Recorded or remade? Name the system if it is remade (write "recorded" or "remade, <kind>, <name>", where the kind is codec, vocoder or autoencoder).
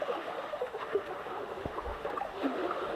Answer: remade, autoencoder, DAC-VAE